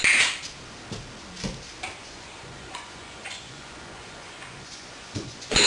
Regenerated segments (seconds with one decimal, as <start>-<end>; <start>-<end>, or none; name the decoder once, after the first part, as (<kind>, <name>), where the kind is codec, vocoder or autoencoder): 2.0-5.7 (vocoder, Vocos)